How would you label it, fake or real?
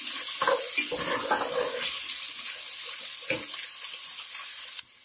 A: real